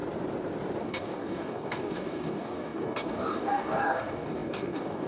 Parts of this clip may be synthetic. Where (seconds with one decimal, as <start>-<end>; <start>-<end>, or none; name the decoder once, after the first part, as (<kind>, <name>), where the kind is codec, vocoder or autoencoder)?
0.8-5.1 (codec, DAC)